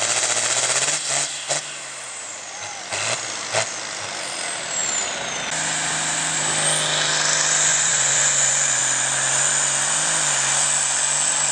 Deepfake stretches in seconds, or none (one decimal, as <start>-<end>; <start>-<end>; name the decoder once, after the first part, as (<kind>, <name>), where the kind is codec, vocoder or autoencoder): 7.7-8.8 (vocoder, Vocos)